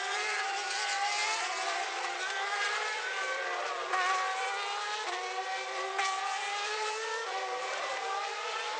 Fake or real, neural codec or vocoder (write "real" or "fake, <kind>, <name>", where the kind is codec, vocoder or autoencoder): fake, vocoder, BigVGAN v2